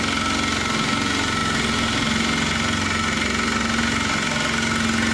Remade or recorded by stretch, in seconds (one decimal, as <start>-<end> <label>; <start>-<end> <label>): 0.0-5.1 recorded